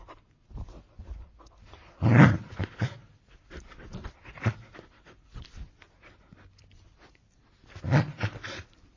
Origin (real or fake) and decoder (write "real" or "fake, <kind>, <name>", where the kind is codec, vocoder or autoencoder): fake, vocoder, BigVGAN v2